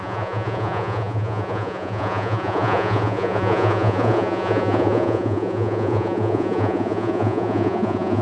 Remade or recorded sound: remade